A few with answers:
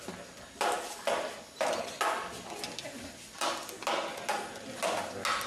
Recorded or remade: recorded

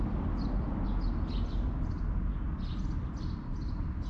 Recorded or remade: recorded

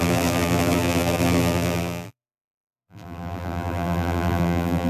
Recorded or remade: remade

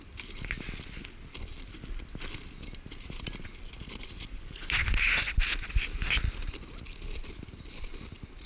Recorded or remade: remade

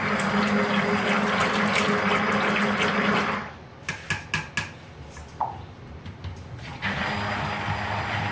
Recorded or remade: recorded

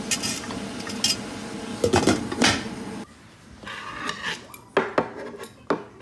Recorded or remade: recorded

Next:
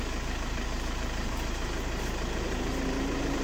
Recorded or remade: remade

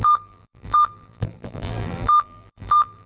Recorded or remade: remade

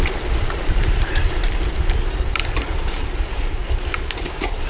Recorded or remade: remade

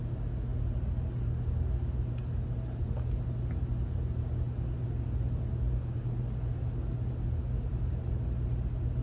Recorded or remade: recorded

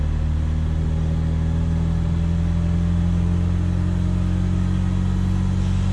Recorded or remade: recorded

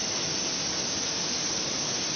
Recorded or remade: remade